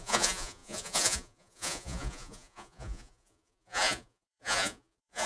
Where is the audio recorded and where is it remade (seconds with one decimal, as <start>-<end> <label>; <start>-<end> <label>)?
0.0-5.3 remade